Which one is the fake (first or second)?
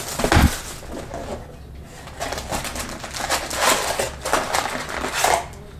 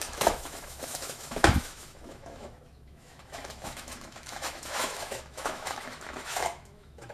second